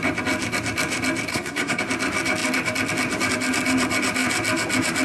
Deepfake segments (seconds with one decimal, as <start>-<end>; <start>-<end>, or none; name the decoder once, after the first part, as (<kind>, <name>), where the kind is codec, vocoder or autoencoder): 1.3-1.8 (codec, SNAC)